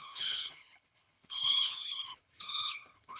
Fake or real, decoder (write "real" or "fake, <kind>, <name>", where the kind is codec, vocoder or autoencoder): fake, codec, HILCodec